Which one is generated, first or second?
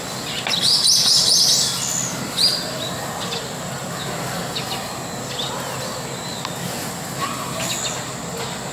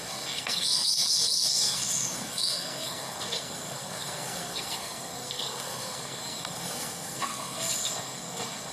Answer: second